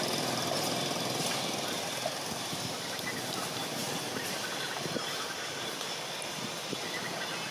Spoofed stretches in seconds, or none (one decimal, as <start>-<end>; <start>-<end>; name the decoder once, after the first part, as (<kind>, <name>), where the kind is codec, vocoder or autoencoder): none